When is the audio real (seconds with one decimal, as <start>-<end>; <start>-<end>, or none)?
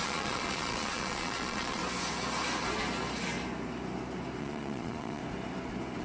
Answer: 1.8-4.4; 5.2-6.0